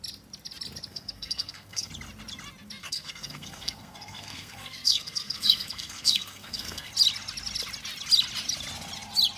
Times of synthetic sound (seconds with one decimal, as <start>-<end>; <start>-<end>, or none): 0.9-1.9; 2.8-6.9